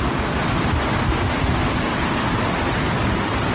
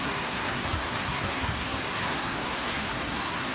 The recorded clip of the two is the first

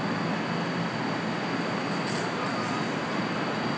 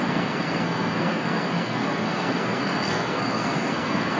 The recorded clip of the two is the first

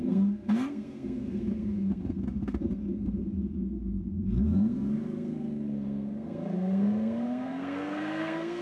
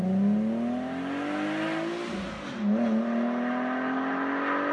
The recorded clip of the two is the second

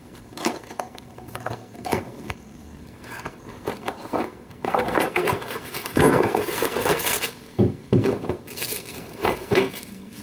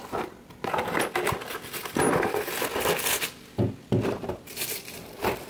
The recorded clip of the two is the second